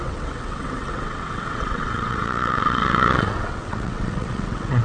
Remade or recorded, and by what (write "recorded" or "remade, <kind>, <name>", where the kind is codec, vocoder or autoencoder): remade, vocoder, WaveNeXt